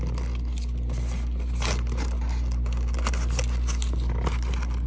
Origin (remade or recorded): recorded